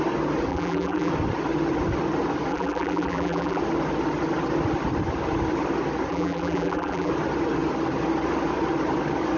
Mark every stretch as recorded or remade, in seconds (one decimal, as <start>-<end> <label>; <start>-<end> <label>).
0.0-0.5 recorded; 0.5-1.1 remade; 1.1-2.5 recorded; 2.5-3.6 remade; 3.6-6.1 recorded; 6.1-7.1 remade; 7.1-9.4 recorded